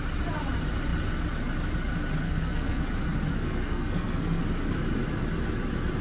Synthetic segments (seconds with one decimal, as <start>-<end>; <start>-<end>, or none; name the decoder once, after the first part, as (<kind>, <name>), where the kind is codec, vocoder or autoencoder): 2.2-2.8 (codec, SNAC); 3.3-4.4

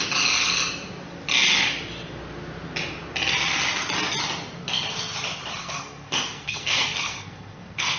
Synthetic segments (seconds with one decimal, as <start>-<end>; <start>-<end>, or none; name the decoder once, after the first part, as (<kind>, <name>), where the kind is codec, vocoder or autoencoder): 5.6-8.0 (codec, SNAC)

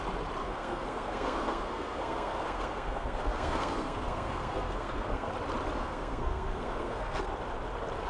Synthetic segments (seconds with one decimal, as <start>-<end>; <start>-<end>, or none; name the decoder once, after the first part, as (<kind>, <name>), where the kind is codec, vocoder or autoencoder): 0.4-5.3 (codec, SNAC); 5.8-7.3

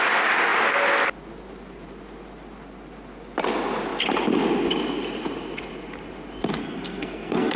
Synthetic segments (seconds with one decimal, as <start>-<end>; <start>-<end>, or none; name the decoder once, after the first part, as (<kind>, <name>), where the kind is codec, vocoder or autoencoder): 6.6-7.6 (codec, SNAC)

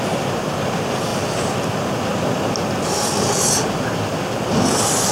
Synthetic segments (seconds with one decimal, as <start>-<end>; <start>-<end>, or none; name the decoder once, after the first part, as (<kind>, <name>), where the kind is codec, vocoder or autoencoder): none